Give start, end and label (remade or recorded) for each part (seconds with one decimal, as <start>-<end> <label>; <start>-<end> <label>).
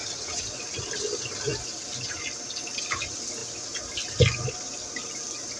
0.0-0.6 remade; 0.6-5.6 recorded